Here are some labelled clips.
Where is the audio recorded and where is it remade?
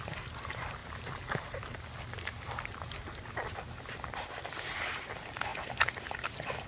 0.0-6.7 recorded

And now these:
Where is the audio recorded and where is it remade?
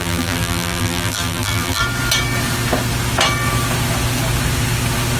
0.0-1.8 remade; 1.8-5.2 recorded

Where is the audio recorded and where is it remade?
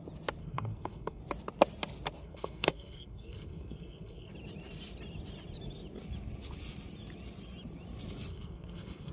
0.0-0.4 recorded; 0.4-1.2 remade; 1.2-2.2 recorded; 2.2-4.3 remade; 4.3-8.3 recorded; 8.3-9.1 remade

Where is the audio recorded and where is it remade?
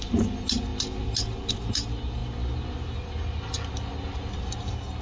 0.0-5.0 recorded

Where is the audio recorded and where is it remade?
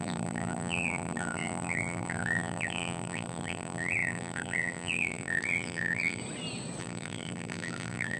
0.0-6.2 remade; 6.2-6.8 recorded; 6.8-8.2 remade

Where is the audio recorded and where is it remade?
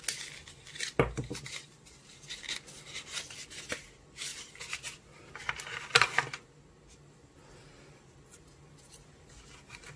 0.0-10.0 recorded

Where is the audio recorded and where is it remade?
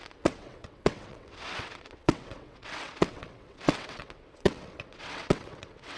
0.0-6.0 remade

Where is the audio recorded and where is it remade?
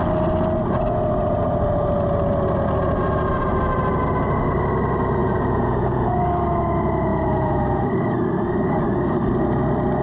0.0-5.2 recorded; 5.2-6.2 remade; 6.2-7.1 recorded; 7.1-7.8 remade; 7.8-10.0 recorded